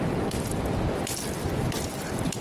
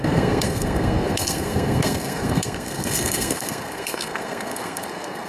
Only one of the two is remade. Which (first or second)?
second